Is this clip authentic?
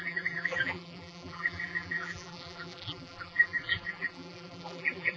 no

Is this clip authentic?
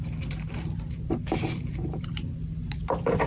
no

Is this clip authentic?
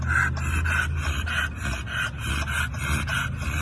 yes